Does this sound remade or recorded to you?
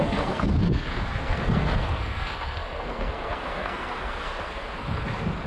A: remade